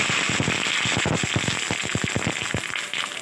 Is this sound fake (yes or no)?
no